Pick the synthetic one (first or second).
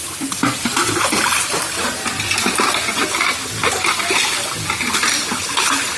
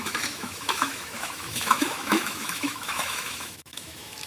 second